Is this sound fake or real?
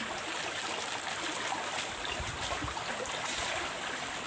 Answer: real